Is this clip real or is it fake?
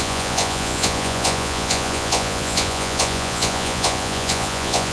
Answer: fake